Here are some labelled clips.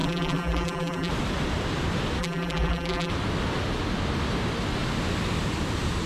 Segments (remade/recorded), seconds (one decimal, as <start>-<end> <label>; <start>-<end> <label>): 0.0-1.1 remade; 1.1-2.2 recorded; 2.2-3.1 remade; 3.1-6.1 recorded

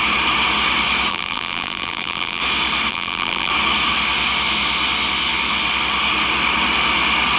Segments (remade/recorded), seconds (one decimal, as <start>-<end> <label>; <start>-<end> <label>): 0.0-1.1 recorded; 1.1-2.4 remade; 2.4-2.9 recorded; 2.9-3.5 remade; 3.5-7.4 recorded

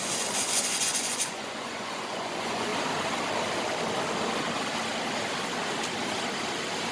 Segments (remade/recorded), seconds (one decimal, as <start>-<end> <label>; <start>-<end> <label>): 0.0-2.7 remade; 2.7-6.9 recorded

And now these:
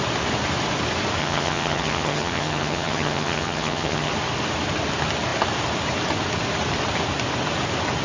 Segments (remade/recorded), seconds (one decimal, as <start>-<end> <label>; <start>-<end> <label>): 0.0-1.2 recorded; 1.2-4.1 remade; 4.1-8.0 recorded

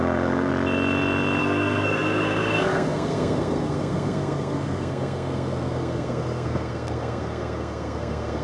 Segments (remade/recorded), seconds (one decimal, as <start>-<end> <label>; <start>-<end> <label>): 0.0-0.5 remade; 0.5-1.4 recorded; 1.4-8.4 remade

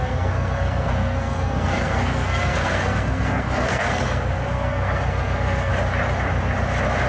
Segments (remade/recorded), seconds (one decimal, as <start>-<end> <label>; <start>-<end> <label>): 0.0-5.7 remade; 5.7-7.1 recorded

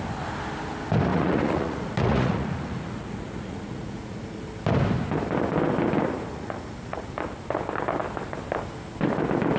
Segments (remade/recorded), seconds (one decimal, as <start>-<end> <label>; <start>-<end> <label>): 0.0-1.1 recorded; 1.1-4.4 remade; 4.4-6.3 recorded; 6.3-7.1 remade; 7.1-9.6 recorded

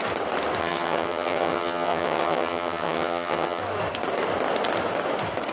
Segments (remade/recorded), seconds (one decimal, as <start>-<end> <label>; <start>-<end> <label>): 0.0-0.6 recorded; 0.6-3.6 remade; 3.6-5.5 recorded